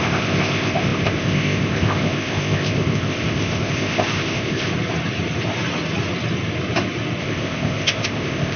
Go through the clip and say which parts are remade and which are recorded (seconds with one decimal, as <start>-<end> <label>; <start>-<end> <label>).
0.0-4.7 remade; 4.7-7.2 recorded; 7.2-8.6 remade